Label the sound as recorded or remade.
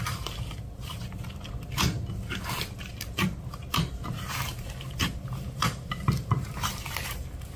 remade